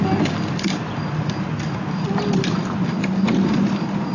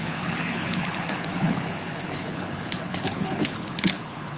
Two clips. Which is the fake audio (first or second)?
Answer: second